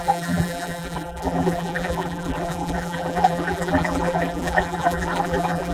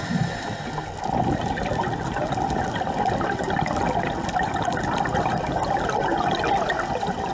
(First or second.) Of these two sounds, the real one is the second